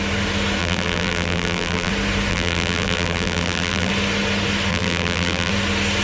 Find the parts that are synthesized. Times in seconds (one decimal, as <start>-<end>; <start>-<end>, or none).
0.6-1.9; 2.3-3.9; 4.7-5.5